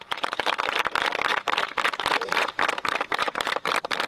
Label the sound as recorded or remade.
remade